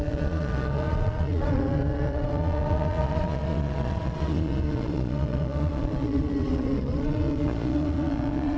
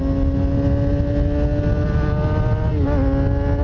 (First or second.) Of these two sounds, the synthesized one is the first